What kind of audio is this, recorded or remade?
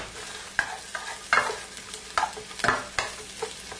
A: recorded